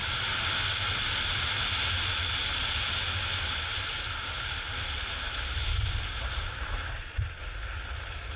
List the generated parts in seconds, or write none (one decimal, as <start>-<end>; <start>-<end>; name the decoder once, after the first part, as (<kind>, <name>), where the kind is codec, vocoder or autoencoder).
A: none